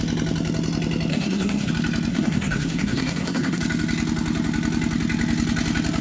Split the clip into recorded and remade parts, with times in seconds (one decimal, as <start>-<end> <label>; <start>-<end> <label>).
0.0-1.1 recorded; 1.1-1.7 remade; 1.7-2.1 recorded; 2.1-3.6 remade; 3.6-6.0 recorded